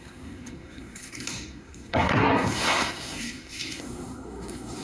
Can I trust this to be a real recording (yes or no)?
no